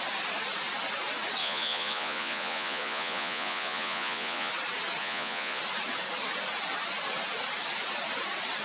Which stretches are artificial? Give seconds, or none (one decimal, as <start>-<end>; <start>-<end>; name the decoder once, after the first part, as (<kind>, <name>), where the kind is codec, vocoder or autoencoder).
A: 1.4-4.5 (vocoder, Vocos); 5.0-5.6